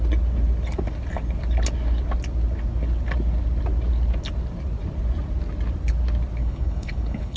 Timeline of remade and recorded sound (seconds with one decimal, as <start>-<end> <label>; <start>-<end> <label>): 0.0-6.4 recorded; 6.4-7.4 remade